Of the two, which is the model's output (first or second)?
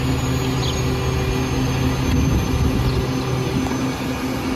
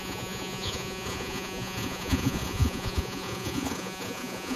second